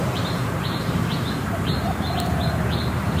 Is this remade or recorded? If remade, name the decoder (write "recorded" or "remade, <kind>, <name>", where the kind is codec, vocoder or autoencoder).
remade, vocoder, BigVGAN v2